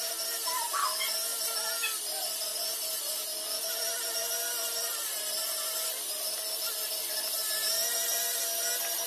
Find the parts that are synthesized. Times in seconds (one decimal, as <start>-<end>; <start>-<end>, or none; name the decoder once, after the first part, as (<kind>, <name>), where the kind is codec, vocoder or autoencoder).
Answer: none